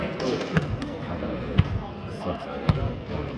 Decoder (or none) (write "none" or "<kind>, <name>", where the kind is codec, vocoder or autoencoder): codec, SNAC